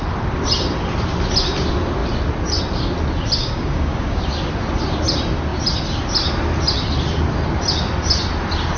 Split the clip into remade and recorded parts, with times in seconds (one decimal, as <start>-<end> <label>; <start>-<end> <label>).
0.0-3.4 recorded; 3.4-4.2 remade; 4.2-8.8 recorded